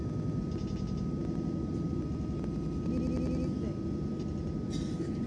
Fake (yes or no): no